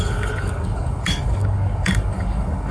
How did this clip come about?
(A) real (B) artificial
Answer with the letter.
B